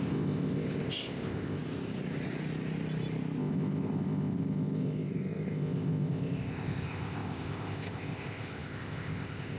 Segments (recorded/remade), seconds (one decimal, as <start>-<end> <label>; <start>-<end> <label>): 0.0-1.6 remade; 1.6-3.4 recorded; 3.4-9.6 remade